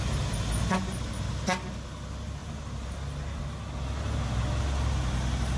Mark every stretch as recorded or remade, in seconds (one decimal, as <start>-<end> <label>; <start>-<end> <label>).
0.0-5.6 recorded